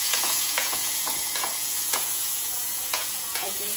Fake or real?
fake